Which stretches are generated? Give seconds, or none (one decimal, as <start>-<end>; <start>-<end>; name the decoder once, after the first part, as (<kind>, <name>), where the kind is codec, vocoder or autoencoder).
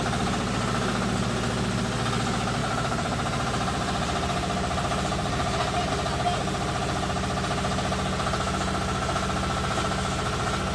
2.6-5.9 (vocoder, BigVGAN v2)